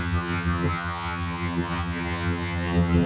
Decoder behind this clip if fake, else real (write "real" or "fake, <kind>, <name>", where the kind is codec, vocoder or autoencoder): fake, vocoder, HiFi-GAN